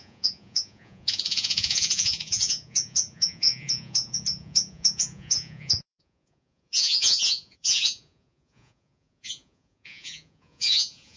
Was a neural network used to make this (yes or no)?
yes